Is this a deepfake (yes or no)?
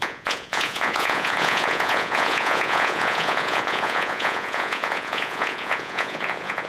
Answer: yes